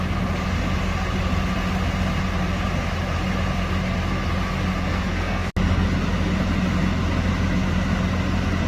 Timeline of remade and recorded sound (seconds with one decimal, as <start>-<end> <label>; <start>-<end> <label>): 0.0-4.9 recorded; 4.9-5.5 remade; 5.5-8.7 recorded